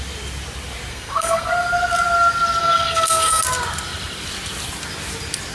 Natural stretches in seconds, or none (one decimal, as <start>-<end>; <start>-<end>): 0.0-0.9; 1.5-2.6; 3.4-5.5